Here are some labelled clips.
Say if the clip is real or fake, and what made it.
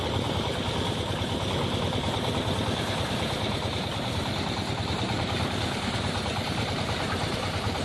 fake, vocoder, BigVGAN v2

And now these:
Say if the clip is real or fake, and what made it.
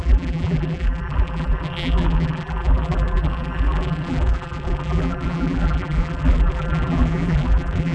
fake, vocoder, BigVGAN v2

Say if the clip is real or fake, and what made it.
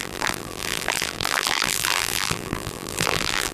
fake, vocoder, BigVGAN v2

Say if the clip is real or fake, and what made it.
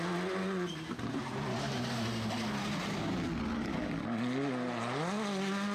real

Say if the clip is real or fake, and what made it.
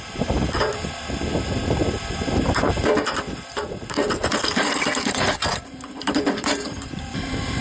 fake, vocoder, BigVGAN v2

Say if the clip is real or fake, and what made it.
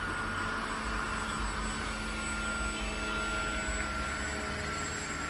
real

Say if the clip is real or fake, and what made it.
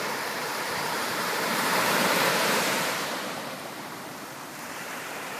fake, vocoder, BigVGAN v2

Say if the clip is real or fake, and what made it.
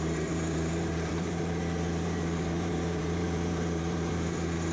fake, vocoder, BigVGAN v2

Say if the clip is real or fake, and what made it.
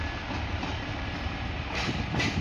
real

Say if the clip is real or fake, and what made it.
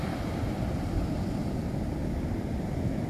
fake, vocoder, BigVGAN v2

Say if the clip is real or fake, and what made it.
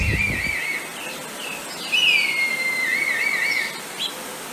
real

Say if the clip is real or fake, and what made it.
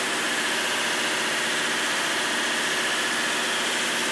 real